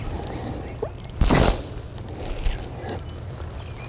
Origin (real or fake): real